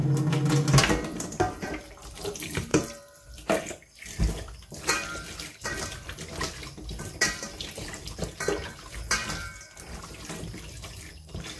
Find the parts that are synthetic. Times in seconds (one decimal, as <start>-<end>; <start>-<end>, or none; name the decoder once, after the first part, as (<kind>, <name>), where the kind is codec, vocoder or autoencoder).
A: 0.8-11.6 (vocoder, BigVGAN v2)